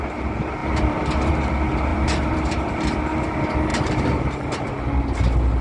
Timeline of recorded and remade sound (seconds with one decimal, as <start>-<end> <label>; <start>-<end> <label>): 0.0-1.9 recorded; 1.9-3.0 remade; 3.0-3.7 recorded; 3.7-4.7 remade; 4.7-5.6 recorded